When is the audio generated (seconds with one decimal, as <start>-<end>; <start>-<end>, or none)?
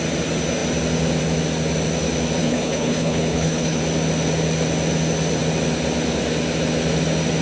2.4-3.8